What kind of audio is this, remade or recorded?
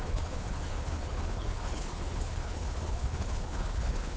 remade